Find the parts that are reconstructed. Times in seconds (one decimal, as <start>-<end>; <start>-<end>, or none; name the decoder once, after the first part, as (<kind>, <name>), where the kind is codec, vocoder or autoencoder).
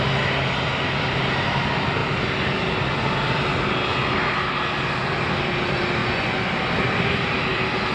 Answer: 6.0-6.5 (vocoder, Vocos)